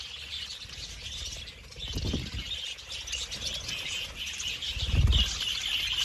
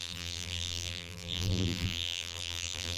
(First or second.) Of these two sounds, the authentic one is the first